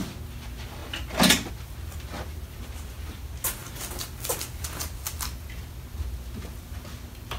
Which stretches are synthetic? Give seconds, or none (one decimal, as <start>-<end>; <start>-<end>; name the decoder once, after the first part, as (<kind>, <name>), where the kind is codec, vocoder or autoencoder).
none